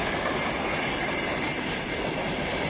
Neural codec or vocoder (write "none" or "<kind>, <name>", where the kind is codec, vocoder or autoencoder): none